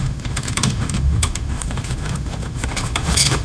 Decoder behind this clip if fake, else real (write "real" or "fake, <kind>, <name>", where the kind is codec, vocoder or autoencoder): fake, autoencoder, DAC-VAE